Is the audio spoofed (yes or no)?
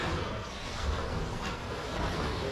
yes